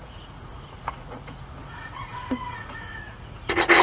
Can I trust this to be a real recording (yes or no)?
no